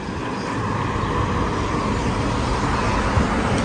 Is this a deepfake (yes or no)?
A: no